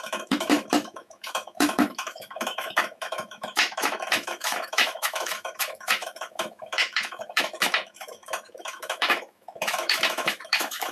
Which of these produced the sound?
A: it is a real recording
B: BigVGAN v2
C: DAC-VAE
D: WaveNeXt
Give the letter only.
C